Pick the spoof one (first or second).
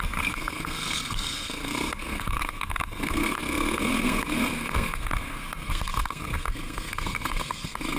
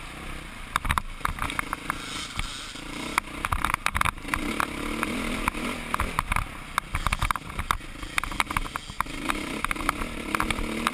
first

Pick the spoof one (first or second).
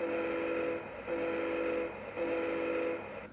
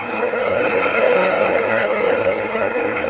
second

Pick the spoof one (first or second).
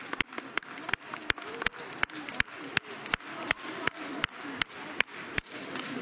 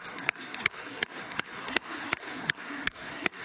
second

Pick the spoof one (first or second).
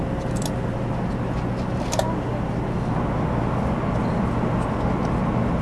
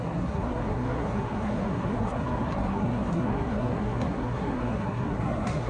second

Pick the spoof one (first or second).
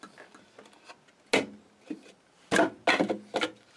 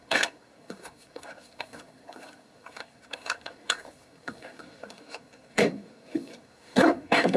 second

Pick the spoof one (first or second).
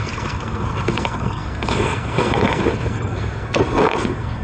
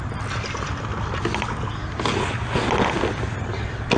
first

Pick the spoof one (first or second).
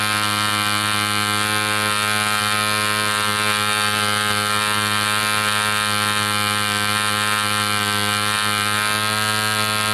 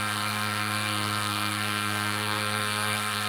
second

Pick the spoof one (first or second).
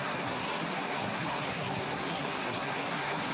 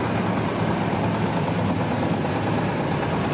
first